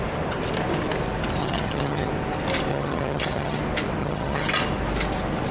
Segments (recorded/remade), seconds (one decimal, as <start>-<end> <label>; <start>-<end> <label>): 0.0-1.4 recorded; 1.4-2.1 remade; 2.1-2.7 recorded; 2.7-3.6 remade; 3.6-4.0 recorded; 4.0-4.5 remade; 4.5-5.5 recorded